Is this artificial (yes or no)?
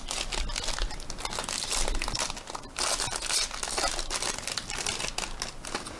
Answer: no